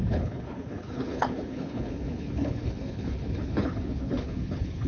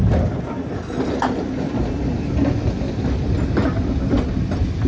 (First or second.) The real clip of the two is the second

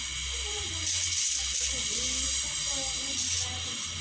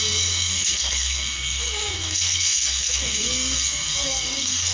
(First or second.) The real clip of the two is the first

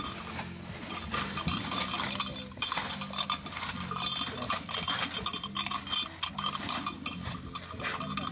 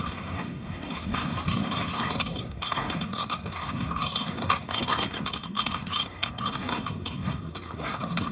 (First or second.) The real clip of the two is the first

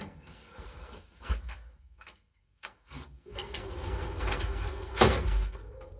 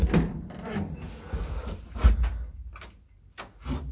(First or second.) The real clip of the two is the second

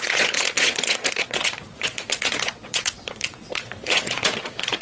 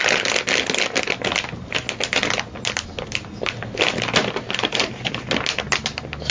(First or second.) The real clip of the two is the second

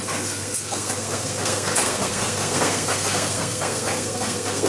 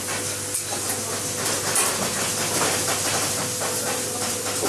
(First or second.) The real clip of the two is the second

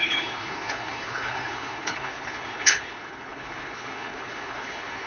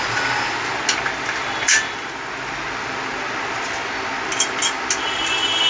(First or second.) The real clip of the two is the second